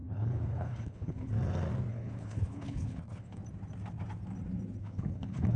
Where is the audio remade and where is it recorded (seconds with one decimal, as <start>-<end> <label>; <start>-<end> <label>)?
0.0-1.3 remade; 1.3-1.9 recorded; 1.9-3.4 remade; 3.4-4.8 recorded; 4.8-5.6 remade